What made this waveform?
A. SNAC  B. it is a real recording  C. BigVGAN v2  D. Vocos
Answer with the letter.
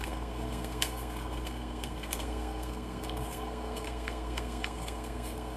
A